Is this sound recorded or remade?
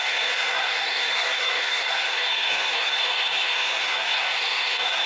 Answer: remade